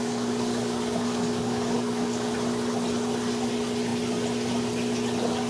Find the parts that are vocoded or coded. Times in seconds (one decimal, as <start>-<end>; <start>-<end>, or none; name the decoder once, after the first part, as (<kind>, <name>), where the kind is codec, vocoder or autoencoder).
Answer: 0.0-2.3 (codec, DAC)